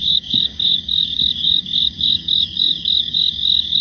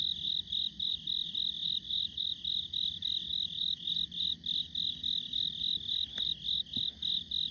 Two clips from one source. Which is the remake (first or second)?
first